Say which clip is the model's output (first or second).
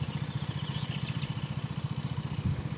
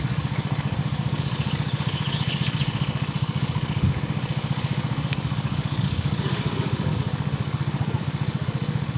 second